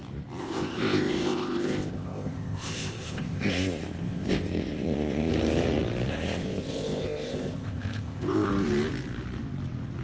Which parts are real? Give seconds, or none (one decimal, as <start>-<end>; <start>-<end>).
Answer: 0.0-0.4; 5.3-6.1; 8.5-10.0